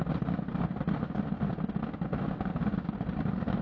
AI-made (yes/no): no